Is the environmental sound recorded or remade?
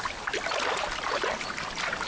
recorded